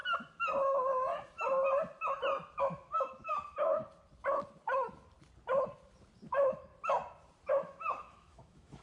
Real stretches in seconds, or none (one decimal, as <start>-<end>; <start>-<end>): 0.0-2.6; 3.8-6.3; 6.7-7.5

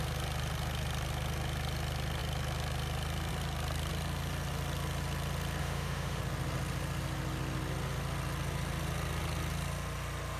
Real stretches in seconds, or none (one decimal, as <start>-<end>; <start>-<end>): 0.0-5.6; 6.2-10.4

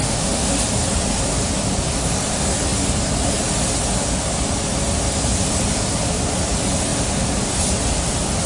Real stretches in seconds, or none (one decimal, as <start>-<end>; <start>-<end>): 0.6-8.5

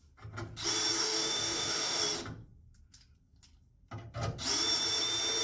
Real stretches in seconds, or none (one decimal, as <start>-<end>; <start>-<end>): 0.0-1.0; 2.0-5.4

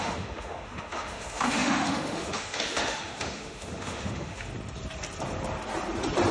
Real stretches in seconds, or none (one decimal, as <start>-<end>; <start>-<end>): 4.5-6.3

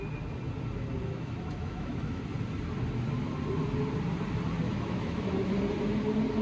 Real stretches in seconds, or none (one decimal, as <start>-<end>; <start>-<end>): 0.0-1.0; 2.2-4.7; 5.5-6.4

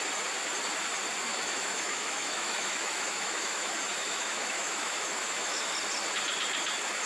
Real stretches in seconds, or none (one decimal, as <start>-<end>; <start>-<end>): 0.0-1.3; 5.6-7.1